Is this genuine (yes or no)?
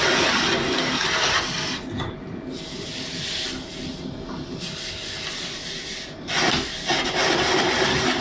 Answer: yes